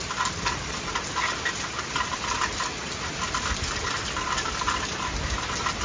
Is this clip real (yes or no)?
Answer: yes